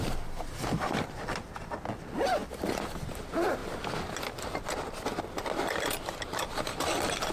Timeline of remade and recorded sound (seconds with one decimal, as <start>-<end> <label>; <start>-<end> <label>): 0.0-7.3 recorded